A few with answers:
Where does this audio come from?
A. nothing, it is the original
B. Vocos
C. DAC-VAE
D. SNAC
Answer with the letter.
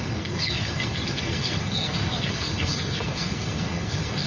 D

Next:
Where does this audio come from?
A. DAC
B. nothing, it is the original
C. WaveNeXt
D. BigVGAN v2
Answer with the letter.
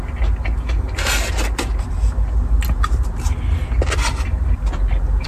B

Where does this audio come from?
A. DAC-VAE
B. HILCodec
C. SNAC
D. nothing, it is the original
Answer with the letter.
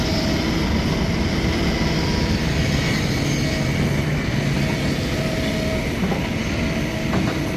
D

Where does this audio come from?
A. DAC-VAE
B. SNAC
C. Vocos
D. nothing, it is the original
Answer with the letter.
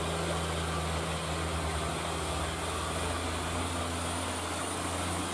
D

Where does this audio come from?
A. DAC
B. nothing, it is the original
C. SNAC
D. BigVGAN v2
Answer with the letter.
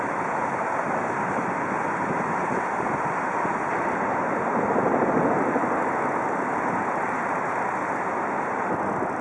B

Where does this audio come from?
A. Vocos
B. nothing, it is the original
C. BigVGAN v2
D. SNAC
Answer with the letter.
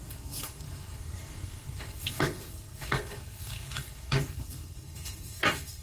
D